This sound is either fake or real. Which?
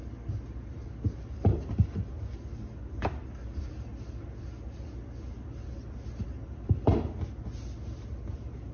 real